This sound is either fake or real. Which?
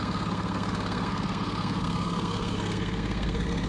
fake